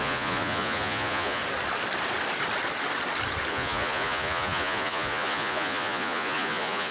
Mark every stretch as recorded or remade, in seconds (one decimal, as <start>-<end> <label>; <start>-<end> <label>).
0.0-1.4 remade; 1.4-3.5 recorded; 3.5-6.9 remade